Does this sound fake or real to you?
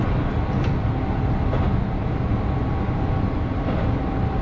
real